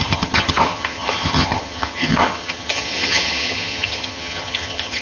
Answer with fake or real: fake